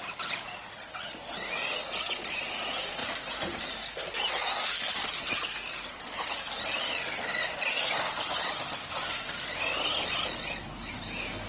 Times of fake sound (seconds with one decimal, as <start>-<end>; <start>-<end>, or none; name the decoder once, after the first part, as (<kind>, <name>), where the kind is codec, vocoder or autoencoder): none